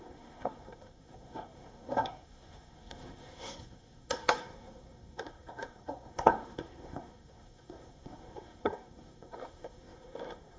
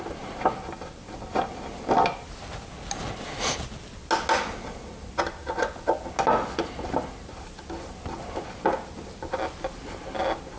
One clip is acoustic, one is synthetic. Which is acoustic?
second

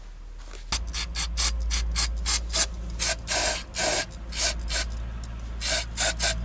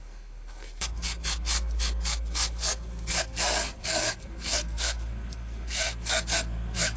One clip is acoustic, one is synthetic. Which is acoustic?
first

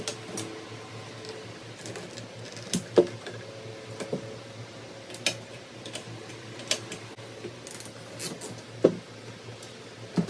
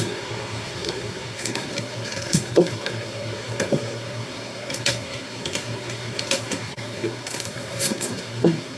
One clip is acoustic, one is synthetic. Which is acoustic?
first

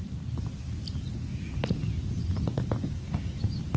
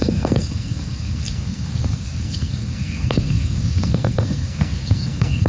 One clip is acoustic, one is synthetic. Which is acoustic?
first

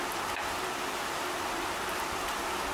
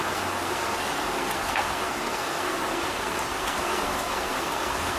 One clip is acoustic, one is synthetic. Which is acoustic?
first